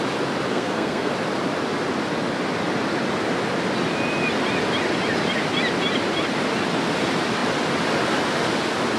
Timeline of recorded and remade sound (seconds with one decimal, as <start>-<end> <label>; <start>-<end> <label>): 0.0-0.5 recorded; 0.5-1.1 remade; 1.1-9.0 recorded